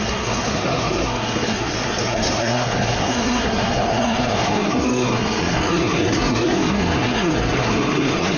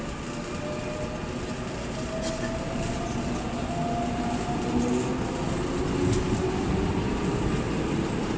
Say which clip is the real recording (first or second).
second